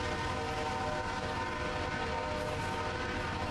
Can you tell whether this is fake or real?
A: real